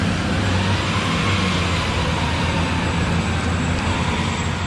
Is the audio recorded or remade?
recorded